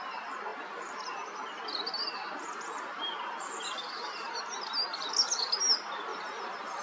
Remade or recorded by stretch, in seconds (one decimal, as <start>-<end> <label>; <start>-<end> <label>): 0.0-6.8 recorded